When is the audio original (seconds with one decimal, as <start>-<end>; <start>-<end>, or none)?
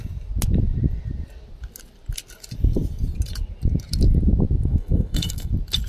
0.0-4.7; 5.5-5.9